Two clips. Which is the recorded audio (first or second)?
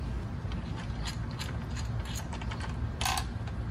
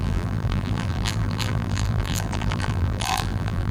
first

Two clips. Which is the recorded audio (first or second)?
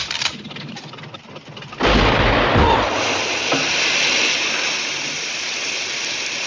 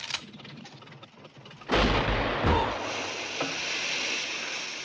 second